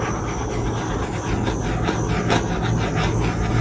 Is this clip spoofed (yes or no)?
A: no